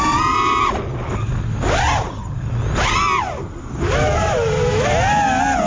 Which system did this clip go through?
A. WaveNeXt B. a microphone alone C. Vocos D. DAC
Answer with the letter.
B